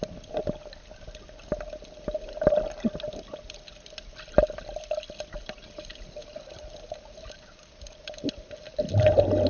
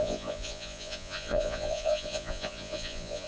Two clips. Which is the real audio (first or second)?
first